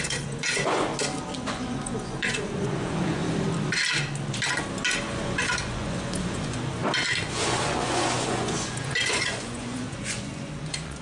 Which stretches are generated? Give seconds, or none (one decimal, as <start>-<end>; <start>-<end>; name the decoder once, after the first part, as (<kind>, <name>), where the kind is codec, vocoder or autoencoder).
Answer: 0.0-0.9 (vocoder, Vocos); 1.5-3.2; 5.0-6.8; 7.3-11.0